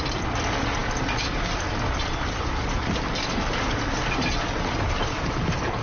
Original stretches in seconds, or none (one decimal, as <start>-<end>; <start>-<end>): 0.0-5.8